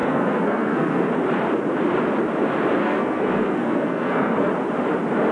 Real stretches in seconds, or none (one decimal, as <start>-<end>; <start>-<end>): 1.1-2.8; 4.5-5.3